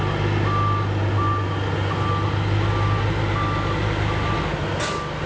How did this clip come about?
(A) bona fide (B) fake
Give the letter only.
A